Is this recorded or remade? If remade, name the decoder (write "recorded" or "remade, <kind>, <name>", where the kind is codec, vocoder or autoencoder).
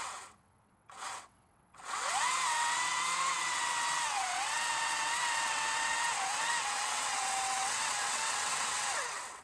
remade, vocoder, WaveNeXt